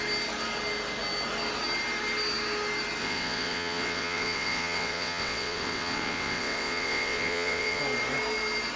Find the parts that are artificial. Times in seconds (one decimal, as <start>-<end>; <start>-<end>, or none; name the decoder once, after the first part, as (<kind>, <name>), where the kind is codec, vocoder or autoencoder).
3.0-7.8 (vocoder, WaveNeXt)